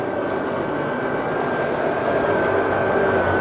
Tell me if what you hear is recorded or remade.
recorded